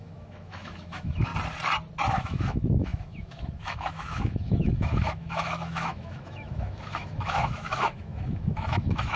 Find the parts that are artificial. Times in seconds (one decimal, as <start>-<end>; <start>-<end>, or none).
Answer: 0.0-1.3; 2.1-9.2